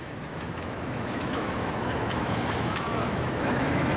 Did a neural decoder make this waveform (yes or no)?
yes